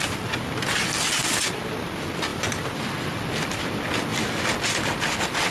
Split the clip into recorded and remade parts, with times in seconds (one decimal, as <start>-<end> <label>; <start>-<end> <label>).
0.0-2.3 recorded; 2.3-3.5 remade; 3.5-5.5 recorded